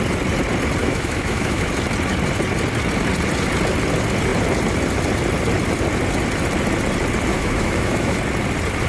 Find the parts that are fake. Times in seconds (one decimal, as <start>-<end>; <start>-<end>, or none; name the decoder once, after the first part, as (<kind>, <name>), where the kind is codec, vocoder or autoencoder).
0.8-1.7 (autoencoder, DAC-VAE); 7.3-8.2